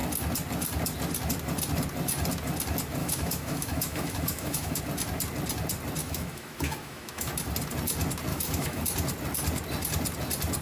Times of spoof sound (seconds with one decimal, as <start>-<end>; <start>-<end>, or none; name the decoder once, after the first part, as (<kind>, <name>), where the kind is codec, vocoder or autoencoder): 3.0-4.8 (autoencoder, DAC-VAE); 6.0-7.3; 8.3-8.8